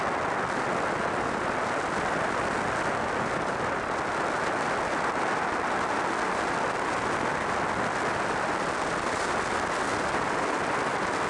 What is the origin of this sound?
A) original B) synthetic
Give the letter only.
A